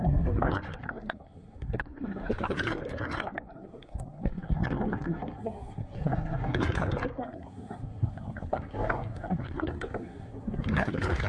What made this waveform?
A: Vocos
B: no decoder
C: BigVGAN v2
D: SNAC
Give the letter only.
D